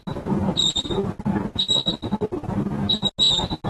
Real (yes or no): yes